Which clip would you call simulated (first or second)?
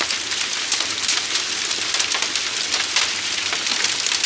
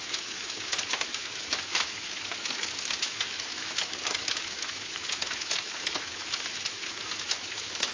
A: second